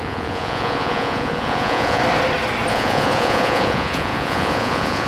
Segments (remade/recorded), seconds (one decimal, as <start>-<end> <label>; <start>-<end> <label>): 0.0-2.0 remade; 2.0-2.7 recorded; 2.7-5.1 remade